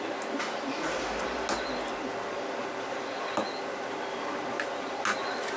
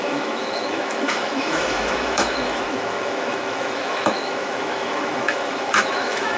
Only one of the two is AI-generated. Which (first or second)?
second